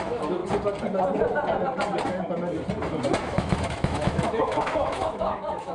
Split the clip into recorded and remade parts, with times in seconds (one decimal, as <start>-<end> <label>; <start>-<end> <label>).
0.0-0.4 remade; 0.4-3.2 recorded; 3.2-5.7 remade